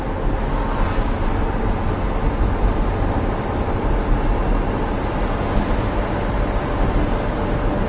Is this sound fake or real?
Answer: real